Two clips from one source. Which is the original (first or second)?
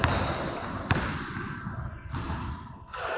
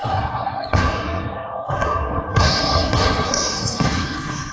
first